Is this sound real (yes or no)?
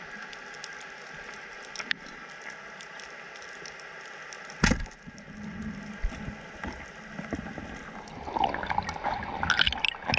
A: yes